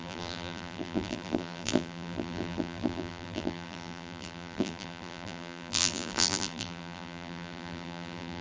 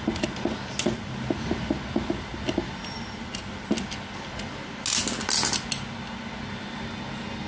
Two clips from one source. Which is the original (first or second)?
second